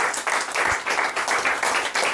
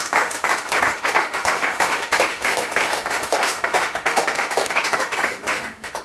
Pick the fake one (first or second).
second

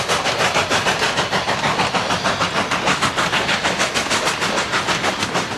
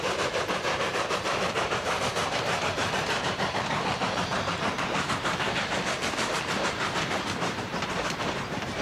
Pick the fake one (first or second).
second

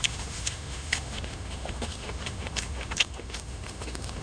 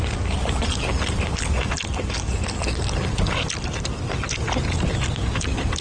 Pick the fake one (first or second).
first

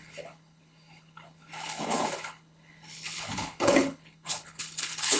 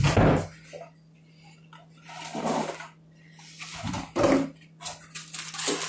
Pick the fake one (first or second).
first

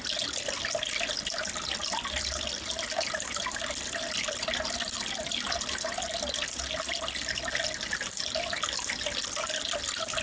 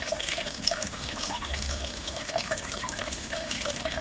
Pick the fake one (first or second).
second